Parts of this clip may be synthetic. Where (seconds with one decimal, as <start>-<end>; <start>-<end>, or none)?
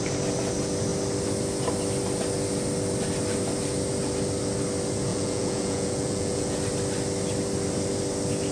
5.1-6.6